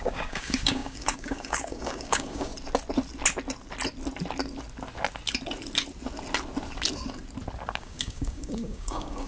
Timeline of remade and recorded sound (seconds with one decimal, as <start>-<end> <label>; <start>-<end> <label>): 0.0-2.5 remade; 2.5-7.8 recorded; 7.8-9.3 remade